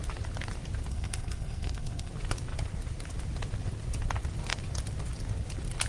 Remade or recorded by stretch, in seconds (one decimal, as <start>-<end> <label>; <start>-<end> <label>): 0.0-0.9 recorded; 0.9-2.1 remade; 2.1-5.9 recorded